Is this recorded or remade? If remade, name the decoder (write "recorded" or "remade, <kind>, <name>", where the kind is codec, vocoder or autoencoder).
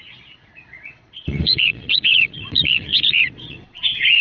remade, vocoder, Vocos